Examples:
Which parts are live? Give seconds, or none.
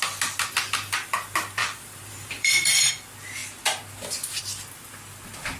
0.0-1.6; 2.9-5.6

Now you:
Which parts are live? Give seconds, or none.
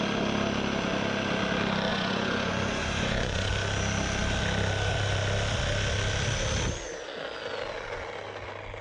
0.0-1.9; 3.5-8.8